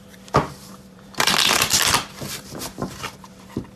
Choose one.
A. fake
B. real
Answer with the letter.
A